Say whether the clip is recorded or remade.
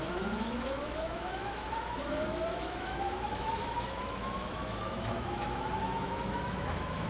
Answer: remade